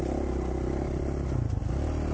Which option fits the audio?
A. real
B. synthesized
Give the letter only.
A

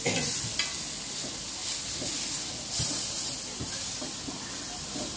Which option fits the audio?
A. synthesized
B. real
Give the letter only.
B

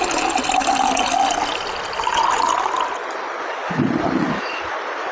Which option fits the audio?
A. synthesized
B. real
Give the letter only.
B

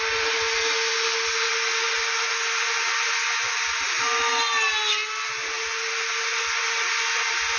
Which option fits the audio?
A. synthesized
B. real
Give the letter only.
B